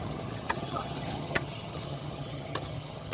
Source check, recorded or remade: remade